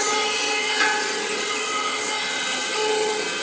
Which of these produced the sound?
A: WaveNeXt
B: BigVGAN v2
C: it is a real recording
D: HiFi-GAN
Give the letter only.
D